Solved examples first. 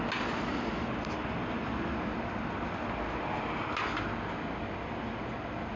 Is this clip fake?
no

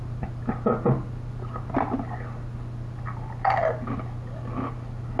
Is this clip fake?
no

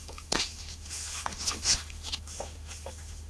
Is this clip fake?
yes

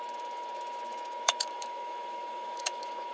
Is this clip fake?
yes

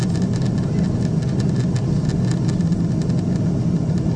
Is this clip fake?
no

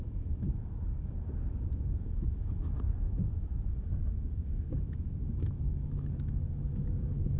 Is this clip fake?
yes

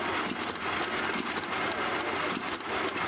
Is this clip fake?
no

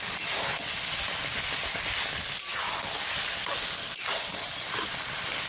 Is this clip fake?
no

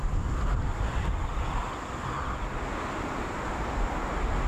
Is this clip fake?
no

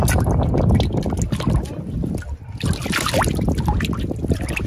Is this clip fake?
no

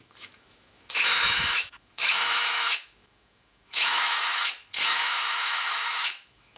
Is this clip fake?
yes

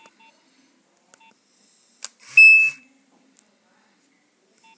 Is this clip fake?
no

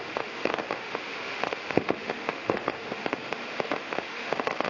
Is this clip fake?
yes